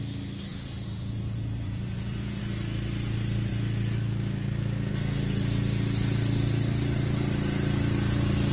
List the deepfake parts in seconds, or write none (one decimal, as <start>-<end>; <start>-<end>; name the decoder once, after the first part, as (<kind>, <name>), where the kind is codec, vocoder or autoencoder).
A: 0.5-2.4 (vocoder, Vocos)